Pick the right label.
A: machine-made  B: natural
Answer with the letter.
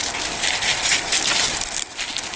B